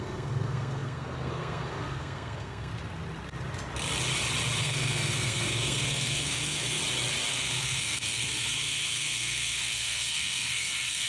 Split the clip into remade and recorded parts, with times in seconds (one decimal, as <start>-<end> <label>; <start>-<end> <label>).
0.0-2.7 remade; 2.7-4.6 recorded; 4.6-6.8 remade; 6.8-7.3 recorded; 7.3-11.1 remade